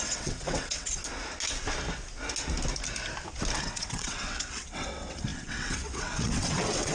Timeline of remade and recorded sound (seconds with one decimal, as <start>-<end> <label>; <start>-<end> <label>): 0.0-1.0 remade; 1.0-3.6 recorded; 3.6-6.9 remade